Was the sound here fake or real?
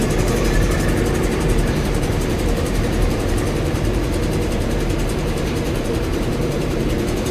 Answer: fake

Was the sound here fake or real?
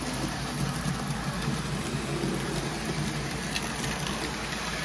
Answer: real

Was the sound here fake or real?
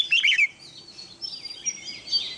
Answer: real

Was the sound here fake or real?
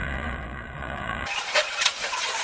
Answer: fake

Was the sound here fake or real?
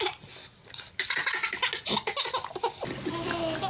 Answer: real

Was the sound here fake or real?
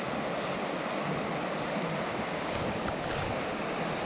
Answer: real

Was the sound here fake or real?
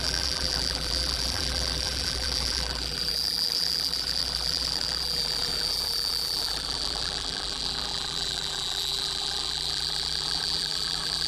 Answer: fake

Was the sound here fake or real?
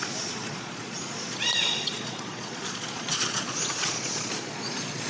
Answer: fake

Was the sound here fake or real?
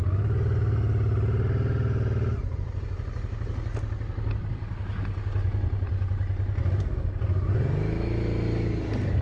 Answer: real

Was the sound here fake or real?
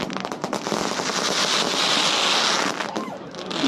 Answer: real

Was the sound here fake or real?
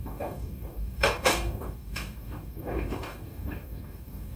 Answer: fake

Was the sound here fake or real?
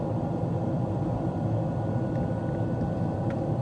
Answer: real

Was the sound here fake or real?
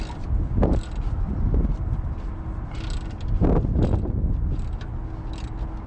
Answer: real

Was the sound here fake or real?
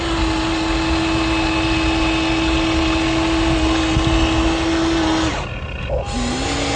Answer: real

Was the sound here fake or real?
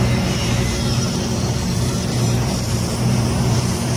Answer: fake